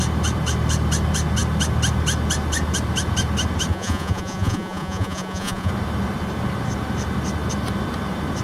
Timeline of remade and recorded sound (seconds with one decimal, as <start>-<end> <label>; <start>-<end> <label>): 0.0-3.7 recorded; 3.7-5.7 remade; 5.7-8.4 recorded